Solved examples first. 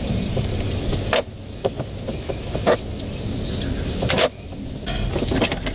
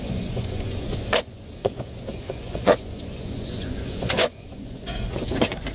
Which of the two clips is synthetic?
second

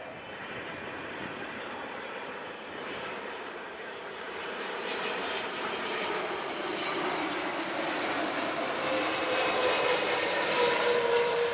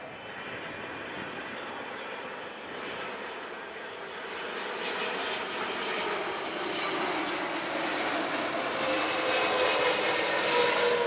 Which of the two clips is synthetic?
first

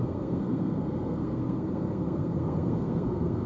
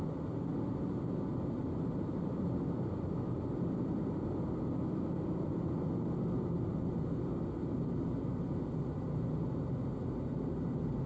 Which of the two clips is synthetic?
first